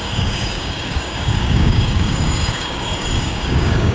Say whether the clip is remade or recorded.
remade